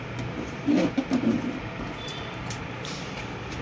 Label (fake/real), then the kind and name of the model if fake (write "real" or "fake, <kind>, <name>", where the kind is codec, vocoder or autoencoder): real